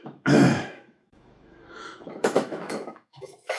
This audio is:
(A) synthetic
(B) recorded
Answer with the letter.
A